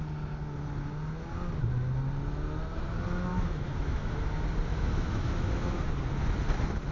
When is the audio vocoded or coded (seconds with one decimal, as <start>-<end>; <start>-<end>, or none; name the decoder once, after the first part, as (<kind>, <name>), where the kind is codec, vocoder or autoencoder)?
3.3-4.1 (autoencoder, DAC-VAE); 4.7-5.8